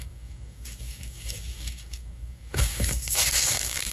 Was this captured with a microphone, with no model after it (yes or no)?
no